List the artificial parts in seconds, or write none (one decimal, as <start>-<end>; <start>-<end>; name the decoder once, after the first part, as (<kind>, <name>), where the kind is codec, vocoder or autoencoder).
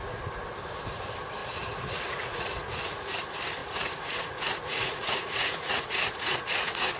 1.4-3.2 (vocoder, Vocos); 3.6-7.0